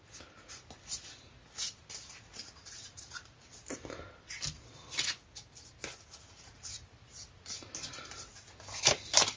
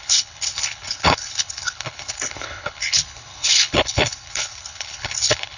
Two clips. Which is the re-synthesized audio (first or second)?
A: second